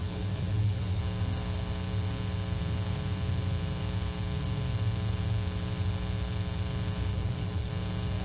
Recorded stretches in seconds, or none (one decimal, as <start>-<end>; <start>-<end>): 1.0-7.1; 7.7-8.2